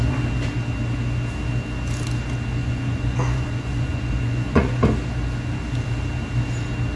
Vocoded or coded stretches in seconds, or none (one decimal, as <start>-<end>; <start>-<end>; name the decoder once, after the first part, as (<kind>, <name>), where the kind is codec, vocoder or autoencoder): 2.6-4.8 (vocoder, Vocos)